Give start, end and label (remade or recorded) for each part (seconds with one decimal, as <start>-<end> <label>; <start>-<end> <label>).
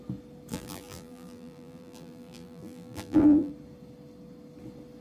0.0-0.5 recorded; 0.5-3.5 remade; 3.5-5.0 recorded